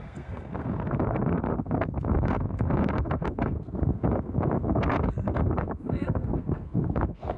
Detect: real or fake fake